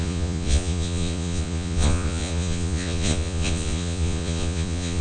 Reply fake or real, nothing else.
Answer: fake